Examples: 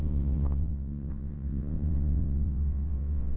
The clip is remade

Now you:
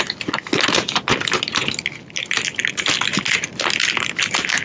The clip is recorded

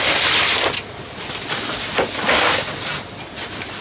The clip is recorded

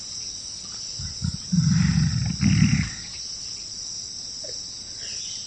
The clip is recorded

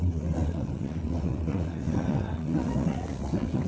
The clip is remade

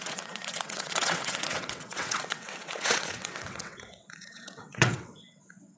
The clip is remade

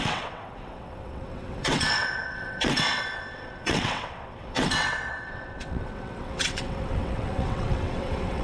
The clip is remade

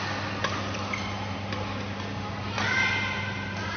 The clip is recorded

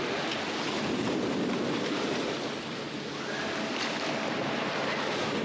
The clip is recorded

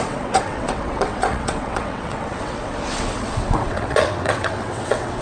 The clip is remade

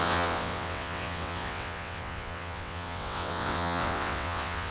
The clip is remade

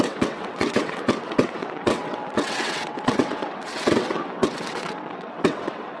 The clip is remade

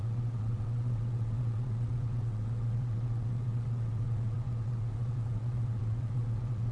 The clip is remade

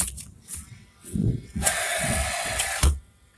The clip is remade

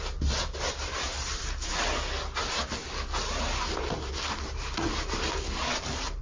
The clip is recorded